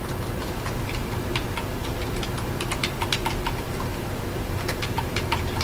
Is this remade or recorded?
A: recorded